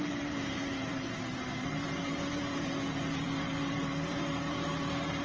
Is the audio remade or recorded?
remade